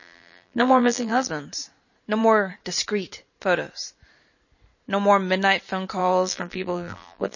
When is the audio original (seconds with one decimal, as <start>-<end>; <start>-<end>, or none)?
1.3-6.0